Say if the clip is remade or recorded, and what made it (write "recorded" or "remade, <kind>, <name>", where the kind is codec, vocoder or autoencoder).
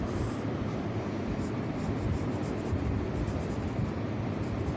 recorded